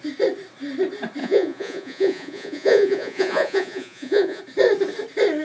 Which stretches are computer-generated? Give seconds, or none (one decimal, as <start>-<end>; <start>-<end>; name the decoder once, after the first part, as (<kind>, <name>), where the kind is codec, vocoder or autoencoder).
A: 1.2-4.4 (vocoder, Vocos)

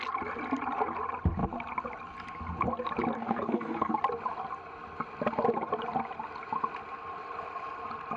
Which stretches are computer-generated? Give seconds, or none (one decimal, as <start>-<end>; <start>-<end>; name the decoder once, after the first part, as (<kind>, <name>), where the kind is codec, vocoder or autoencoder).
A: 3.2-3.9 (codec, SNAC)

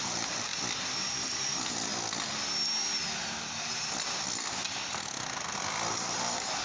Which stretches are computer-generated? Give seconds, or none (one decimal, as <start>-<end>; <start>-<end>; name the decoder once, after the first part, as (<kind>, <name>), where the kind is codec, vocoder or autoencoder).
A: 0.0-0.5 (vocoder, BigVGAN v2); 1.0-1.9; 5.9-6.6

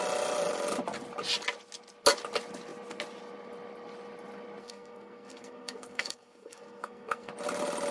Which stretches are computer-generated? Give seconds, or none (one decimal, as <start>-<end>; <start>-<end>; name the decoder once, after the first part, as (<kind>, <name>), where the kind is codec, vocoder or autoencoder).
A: 4.6-7.3 (codec, SNAC)

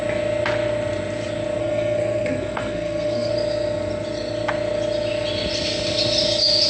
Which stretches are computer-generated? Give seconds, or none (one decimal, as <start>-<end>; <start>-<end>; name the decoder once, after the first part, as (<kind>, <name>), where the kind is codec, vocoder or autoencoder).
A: 1.6-3.3 (codec, SNAC)

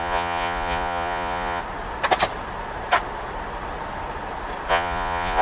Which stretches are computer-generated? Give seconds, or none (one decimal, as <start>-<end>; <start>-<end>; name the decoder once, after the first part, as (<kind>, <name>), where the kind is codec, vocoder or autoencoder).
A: 0.0-1.6 (vocoder, Vocos); 4.7-5.4